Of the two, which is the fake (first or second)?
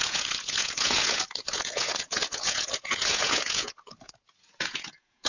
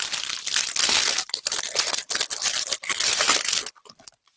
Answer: first